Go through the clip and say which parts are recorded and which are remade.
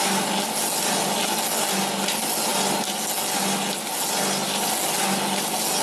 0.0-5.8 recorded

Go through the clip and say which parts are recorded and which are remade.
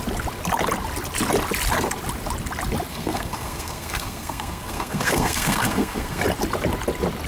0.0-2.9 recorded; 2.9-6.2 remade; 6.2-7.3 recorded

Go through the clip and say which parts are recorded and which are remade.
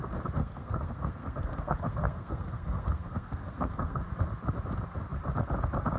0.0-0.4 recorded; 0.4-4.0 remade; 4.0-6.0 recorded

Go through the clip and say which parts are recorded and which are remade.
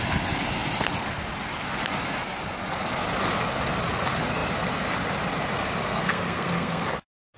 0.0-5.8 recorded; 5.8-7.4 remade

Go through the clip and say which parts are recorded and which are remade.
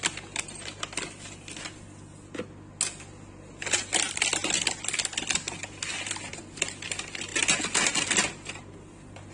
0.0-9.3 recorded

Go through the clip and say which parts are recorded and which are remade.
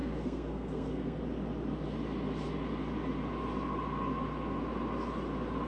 0.0-1.2 remade; 1.2-5.7 recorded